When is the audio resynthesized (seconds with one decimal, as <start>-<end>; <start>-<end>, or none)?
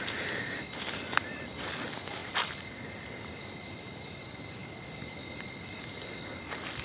none